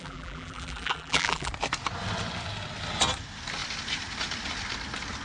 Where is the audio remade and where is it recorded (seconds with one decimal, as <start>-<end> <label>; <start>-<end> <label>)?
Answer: 0.0-1.5 remade; 1.5-5.2 recorded